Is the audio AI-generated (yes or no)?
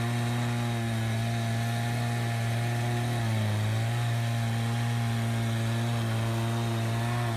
no